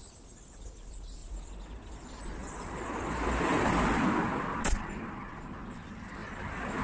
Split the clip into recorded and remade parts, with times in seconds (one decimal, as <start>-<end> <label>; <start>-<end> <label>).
0.0-1.2 recorded; 1.2-1.9 remade; 1.9-2.4 recorded; 2.4-3.7 remade; 3.7-6.2 recorded; 6.2-6.8 remade